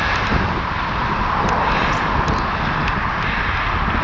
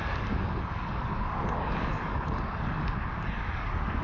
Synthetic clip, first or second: second